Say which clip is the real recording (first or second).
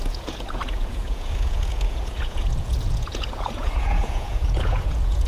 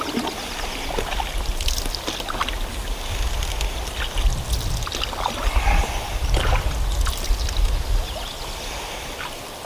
second